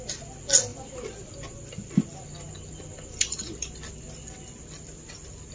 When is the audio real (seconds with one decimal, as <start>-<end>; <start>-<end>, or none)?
0.0-0.7; 3.9-5.5